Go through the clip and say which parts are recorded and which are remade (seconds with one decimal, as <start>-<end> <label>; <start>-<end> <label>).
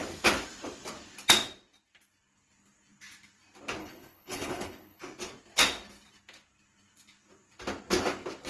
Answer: 0.0-3.8 recorded; 3.8-5.0 remade; 5.0-8.5 recorded